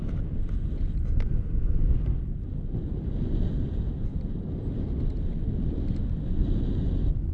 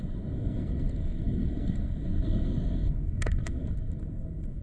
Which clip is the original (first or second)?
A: first